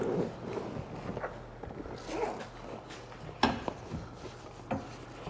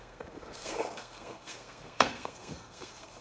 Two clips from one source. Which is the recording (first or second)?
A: first